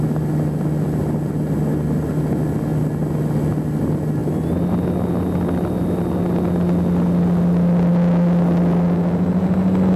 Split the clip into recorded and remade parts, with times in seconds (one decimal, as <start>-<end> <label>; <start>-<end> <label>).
0.0-10.0 recorded